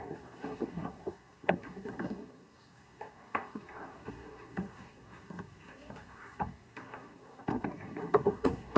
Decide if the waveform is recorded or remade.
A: remade